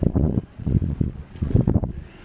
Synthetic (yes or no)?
yes